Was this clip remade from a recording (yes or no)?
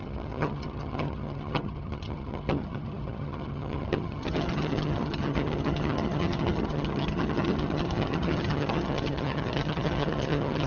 yes